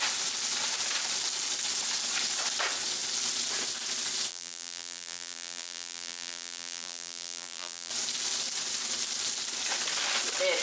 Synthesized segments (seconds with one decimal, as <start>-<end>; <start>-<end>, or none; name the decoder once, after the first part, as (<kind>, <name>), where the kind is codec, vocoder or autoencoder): 4.3-7.9 (vocoder, BigVGAN v2)